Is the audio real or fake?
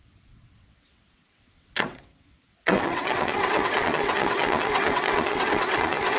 fake